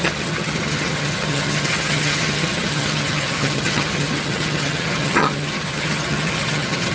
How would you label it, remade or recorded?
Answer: remade